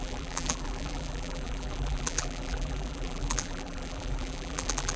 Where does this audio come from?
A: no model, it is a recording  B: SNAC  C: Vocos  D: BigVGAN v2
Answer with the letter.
D